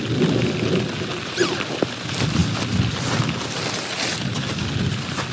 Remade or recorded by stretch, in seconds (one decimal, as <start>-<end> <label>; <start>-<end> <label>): 0.0-5.3 recorded